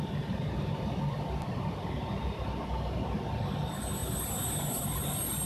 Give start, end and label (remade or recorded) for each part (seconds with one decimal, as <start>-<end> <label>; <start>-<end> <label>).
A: 0.0-5.5 recorded